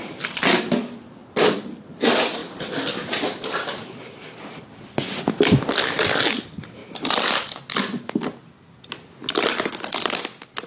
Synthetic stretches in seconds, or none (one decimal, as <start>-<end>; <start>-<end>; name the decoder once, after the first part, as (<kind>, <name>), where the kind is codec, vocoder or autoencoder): none